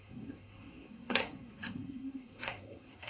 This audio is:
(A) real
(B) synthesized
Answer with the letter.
B